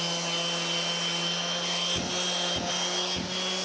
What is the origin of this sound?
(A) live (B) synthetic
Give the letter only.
A